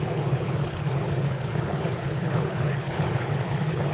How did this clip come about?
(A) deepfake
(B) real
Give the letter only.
A